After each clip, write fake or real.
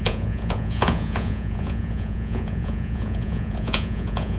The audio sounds fake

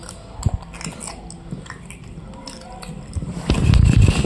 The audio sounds real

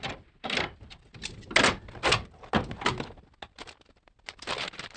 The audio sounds real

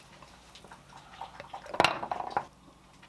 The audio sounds real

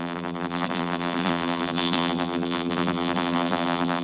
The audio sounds fake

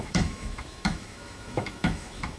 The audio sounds fake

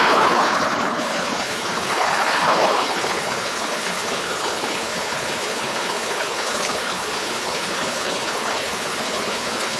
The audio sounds fake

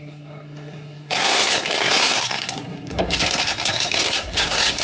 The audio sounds fake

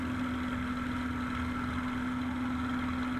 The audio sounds real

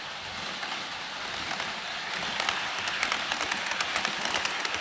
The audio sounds real